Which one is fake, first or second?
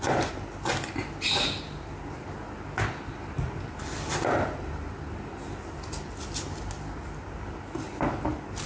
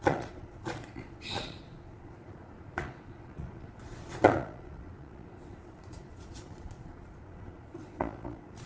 second